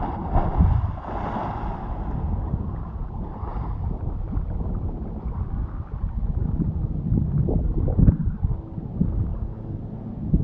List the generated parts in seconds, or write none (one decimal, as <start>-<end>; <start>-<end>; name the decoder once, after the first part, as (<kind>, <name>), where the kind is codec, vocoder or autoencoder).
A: 9.3-9.8 (codec, DAC)

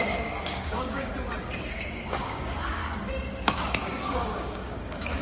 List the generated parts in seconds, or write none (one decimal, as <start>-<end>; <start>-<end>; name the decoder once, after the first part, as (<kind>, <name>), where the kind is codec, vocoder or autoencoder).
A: 0.0-1.1 (codec, DAC); 1.7-2.8; 3.3-5.2